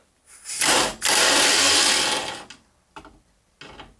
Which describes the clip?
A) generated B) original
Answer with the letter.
B